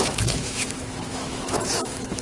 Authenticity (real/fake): fake